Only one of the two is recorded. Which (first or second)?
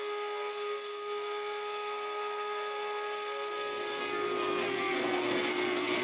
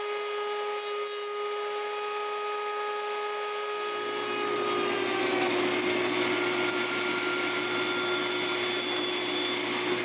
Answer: second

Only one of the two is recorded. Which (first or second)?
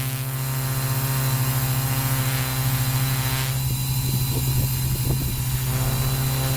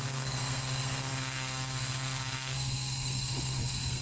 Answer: first